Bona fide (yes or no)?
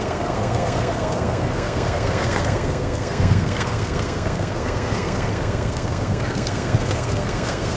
no